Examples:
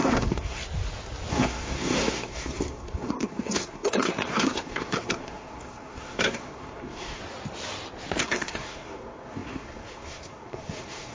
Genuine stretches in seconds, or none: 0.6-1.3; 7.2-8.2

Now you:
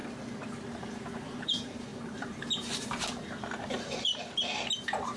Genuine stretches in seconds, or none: 0.0-0.7; 4.1-4.8

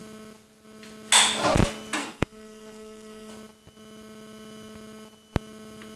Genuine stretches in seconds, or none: 0.0-2.0; 3.3-6.0

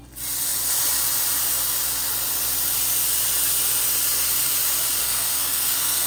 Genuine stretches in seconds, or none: 0.0-5.0